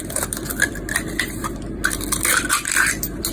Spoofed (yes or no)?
yes